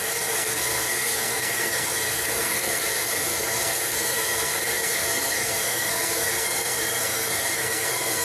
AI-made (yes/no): yes